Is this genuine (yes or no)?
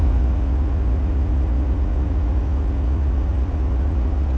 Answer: no